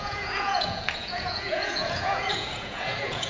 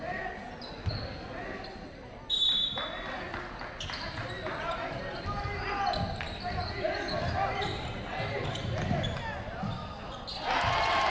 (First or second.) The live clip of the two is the second